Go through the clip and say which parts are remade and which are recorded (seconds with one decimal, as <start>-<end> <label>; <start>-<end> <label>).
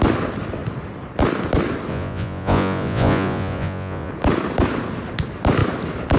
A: 0.0-1.9 recorded; 1.9-4.1 remade; 4.1-6.2 recorded